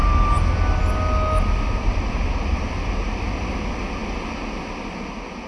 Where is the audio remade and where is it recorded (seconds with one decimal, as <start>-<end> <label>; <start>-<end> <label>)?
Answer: 0.0-5.5 recorded